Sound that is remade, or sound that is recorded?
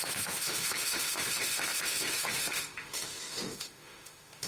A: remade